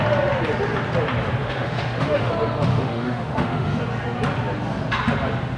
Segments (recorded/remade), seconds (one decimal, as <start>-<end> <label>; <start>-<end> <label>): 0.0-1.4 recorded; 1.4-2.3 remade; 2.3-2.7 recorded; 2.7-3.8 remade; 3.8-5.6 recorded